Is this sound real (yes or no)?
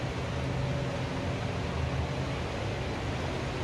yes